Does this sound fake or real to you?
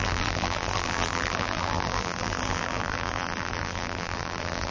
fake